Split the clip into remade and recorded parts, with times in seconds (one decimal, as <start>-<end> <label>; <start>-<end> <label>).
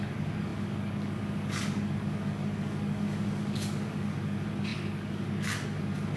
0.0-6.2 remade